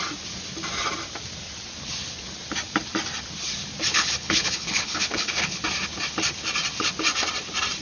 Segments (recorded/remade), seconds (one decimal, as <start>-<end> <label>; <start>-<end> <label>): 0.0-3.9 recorded; 3.9-5.6 remade; 5.6-7.8 recorded